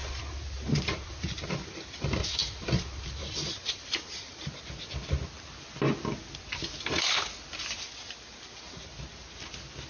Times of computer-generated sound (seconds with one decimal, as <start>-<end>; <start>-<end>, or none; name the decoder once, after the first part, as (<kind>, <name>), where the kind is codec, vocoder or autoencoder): 0.0-1.4 (vocoder, BigVGAN v2); 2.4-4.5